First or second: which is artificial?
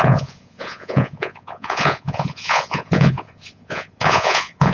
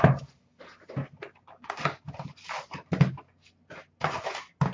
first